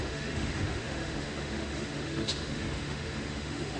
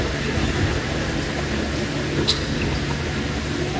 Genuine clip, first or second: second